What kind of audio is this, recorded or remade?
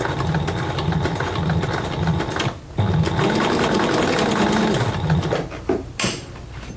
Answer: recorded